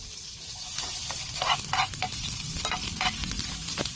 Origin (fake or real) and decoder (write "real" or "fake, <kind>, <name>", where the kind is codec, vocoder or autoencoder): real